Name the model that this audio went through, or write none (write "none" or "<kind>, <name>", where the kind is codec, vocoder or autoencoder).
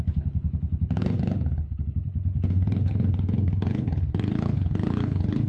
codec, HILCodec